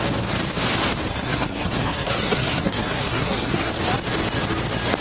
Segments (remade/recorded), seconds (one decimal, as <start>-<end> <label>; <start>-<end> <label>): 0.0-1.1 recorded; 1.1-3.7 remade; 3.7-5.0 recorded